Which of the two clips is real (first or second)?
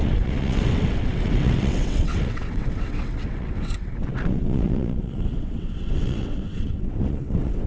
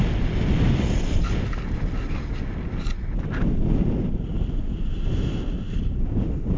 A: second